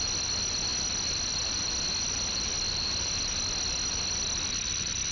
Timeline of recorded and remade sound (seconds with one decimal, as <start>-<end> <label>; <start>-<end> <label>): 0.0-5.1 recorded